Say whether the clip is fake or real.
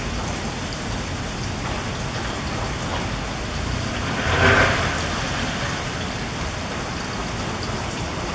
real